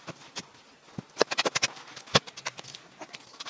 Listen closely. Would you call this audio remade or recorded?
recorded